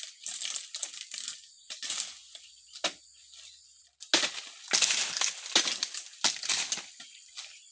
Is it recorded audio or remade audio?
recorded